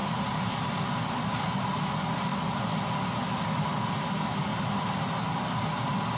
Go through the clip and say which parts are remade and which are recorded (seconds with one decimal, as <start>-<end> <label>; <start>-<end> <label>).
0.0-6.2 recorded